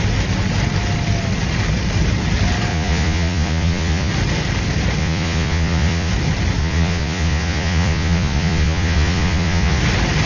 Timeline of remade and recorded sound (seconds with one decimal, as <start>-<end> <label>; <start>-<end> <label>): 0.0-2.7 recorded; 2.7-4.1 remade; 4.1-5.0 recorded; 5.0-6.1 remade; 6.1-6.6 recorded; 6.6-9.8 remade; 9.8-10.3 recorded